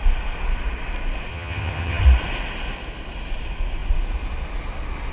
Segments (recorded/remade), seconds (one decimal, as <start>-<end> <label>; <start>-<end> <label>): 0.0-1.3 recorded; 1.3-2.0 remade; 2.0-5.1 recorded